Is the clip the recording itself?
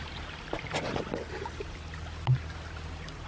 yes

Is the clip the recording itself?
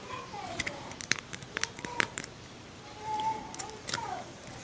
no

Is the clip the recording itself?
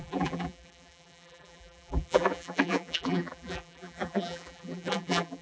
no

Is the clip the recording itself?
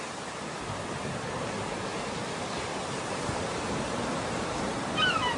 no